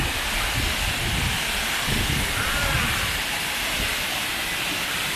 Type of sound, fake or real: real